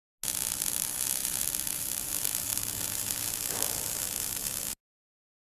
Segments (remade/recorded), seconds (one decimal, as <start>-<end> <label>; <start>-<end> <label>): 0.0-5.5 recorded